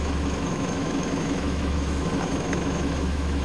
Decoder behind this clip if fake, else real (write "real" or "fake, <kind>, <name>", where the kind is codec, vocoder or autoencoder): fake, autoencoder, DAC-VAE